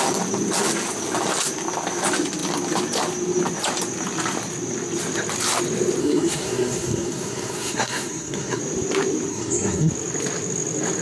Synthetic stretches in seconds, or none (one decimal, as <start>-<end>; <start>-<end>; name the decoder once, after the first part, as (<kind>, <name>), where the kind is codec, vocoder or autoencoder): 6.0-8.6 (codec, SNAC); 9.3-9.9